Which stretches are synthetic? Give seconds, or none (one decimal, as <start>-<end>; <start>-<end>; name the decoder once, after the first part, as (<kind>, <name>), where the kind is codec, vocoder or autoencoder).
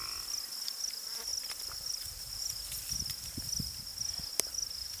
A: none